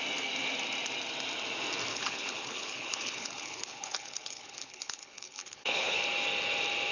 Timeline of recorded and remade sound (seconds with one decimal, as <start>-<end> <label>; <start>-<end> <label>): 0.0-1.9 recorded; 1.9-6.0 remade; 6.0-6.9 recorded